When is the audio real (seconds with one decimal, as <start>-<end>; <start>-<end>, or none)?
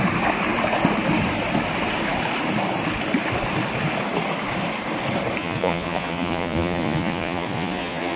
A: 0.0-5.4